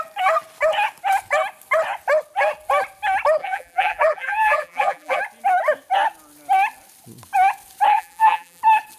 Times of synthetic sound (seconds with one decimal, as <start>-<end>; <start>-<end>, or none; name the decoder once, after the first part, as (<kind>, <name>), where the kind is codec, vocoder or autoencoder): 3.4-5.2 (vocoder, BigVGAN v2); 7.9-8.6